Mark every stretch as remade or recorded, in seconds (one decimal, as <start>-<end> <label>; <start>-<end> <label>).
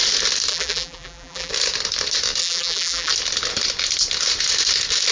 0.0-0.5 recorded; 0.5-1.5 remade; 1.5-2.4 recorded; 2.4-3.1 remade; 3.1-5.1 recorded